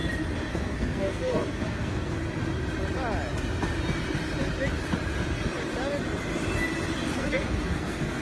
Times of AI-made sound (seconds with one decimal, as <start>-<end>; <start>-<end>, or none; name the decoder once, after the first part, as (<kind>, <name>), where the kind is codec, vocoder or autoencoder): 0.5-2.2 (codec, SNAC); 7.1-8.2